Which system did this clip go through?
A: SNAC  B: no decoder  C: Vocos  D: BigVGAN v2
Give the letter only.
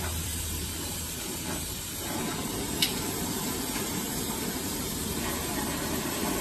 D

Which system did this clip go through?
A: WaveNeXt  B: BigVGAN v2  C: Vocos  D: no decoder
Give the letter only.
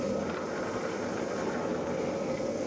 D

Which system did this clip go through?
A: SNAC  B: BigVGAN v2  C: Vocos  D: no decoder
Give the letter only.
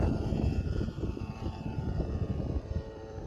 B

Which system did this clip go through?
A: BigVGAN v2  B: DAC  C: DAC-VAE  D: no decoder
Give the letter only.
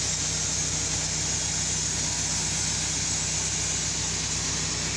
D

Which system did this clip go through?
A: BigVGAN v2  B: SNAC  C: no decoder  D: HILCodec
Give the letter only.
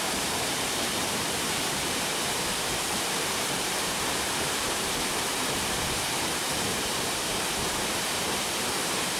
A